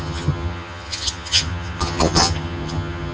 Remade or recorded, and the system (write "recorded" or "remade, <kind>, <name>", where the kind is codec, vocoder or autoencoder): remade, vocoder, HiFi-GAN